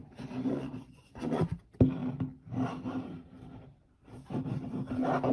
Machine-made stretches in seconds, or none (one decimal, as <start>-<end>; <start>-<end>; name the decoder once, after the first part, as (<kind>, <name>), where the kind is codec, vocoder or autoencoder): 0.0-1.4 (vocoder, Vocos)